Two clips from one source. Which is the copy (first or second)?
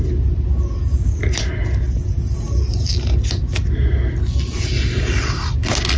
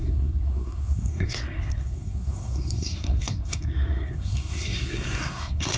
second